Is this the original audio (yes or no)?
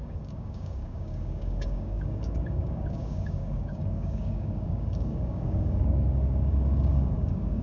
no